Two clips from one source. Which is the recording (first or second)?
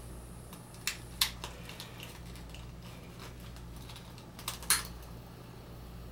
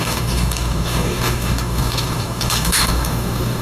first